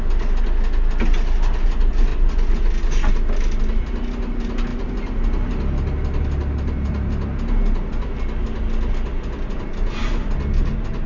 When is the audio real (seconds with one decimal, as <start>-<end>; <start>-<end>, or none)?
0.0-11.1